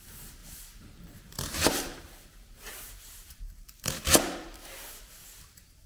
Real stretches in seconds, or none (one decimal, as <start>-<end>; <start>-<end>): 0.0-0.4; 3.9-5.2